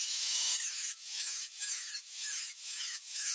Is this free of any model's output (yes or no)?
no